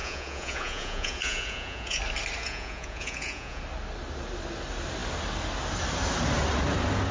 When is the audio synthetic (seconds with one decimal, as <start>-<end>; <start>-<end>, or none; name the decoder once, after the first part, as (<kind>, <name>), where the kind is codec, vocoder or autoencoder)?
0.0-2.0 (vocoder, Vocos); 2.4-3.6